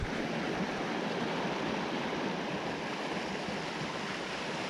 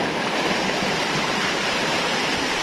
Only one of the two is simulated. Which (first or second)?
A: second